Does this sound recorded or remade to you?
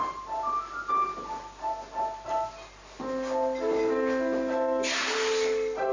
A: recorded